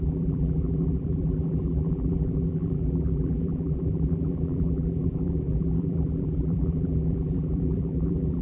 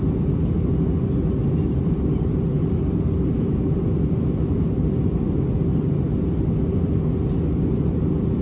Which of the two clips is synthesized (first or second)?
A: first